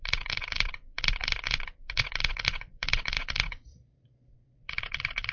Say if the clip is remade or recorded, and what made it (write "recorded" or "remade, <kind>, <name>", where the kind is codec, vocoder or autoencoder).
remade, vocoder, Vocos